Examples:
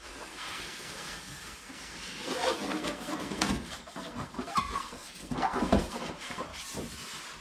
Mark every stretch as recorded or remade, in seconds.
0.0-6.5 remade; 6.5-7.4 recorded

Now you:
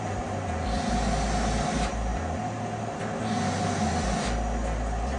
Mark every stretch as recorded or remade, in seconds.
0.0-5.2 recorded

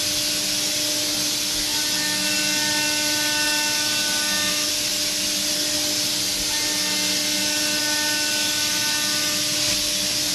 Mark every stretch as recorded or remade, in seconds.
0.0-10.3 recorded

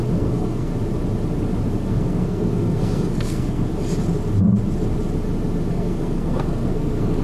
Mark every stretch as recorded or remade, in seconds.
0.0-0.7 remade; 0.7-1.7 recorded; 1.7-3.7 remade; 3.7-5.7 recorded; 5.7-7.2 remade

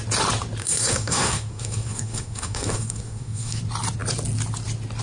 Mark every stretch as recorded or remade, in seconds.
0.0-0.6 recorded; 0.6-3.6 remade; 3.6-5.0 recorded

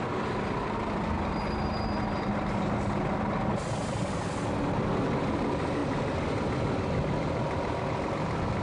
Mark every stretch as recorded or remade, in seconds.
0.0-8.6 recorded